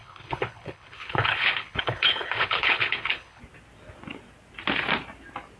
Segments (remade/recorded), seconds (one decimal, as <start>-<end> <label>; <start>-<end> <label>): 0.0-3.4 remade; 3.4-5.6 recorded